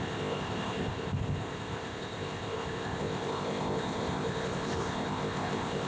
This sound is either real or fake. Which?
fake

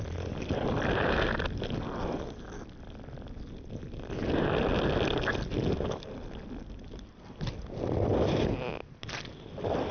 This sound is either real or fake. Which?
real